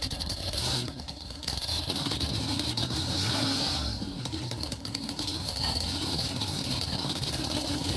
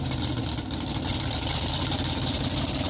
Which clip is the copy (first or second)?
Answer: first